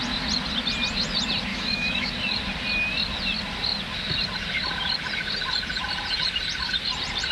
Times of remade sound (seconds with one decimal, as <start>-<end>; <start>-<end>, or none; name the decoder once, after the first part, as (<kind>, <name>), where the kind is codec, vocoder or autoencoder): 1.5-2.1 (autoencoder, DAC-VAE)